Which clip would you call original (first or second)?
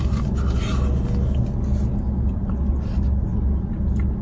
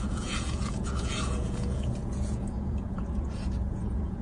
first